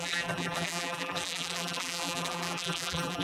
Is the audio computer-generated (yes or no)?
yes